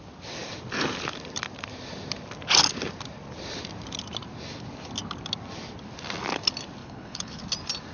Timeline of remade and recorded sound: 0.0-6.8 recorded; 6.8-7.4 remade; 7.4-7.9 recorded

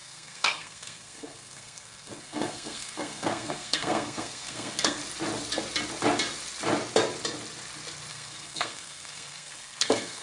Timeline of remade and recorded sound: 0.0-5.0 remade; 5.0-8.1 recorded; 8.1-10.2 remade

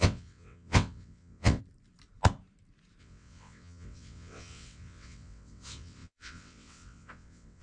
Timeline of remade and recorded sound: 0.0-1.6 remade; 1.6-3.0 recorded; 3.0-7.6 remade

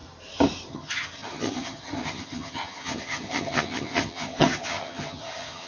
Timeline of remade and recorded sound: 0.0-0.7 recorded; 0.7-5.7 remade

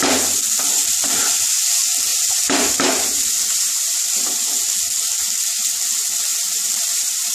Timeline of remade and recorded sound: 0.0-2.1 recorded; 2.1-4.1 remade; 4.1-6.3 recorded; 6.3-7.3 remade